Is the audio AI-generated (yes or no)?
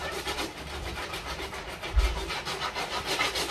yes